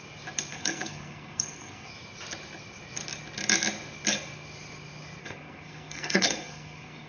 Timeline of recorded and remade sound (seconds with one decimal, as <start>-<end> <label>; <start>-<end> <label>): 0.0-0.5 recorded; 0.5-1.9 remade; 1.9-5.2 recorded; 5.2-7.1 remade